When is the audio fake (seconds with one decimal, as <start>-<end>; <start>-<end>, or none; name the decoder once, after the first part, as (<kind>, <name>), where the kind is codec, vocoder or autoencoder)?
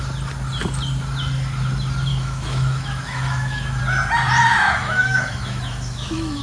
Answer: 2.1-3.8 (autoencoder, DAC-VAE); 4.4-6.4